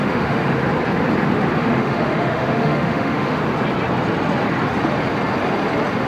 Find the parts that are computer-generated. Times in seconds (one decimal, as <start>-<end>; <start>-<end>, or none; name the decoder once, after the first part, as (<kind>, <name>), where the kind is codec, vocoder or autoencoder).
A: 0.0-0.5 (autoencoder, DAC-VAE); 1.6-3.4